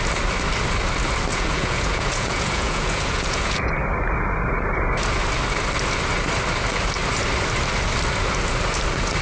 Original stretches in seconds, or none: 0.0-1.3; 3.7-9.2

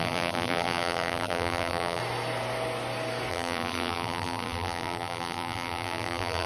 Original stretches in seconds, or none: 2.0-3.3

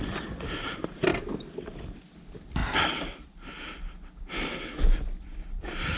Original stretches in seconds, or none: 1.1-2.1; 2.6-5.2

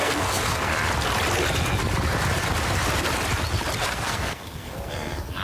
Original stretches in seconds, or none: 0.7-3.8